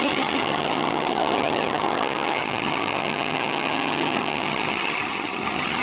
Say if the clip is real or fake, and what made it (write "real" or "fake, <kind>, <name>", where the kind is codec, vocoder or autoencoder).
fake, vocoder, HiFi-GAN